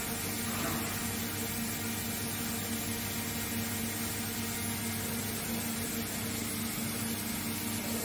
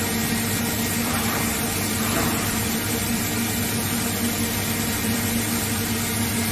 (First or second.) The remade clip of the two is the second